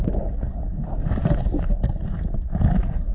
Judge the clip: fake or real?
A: fake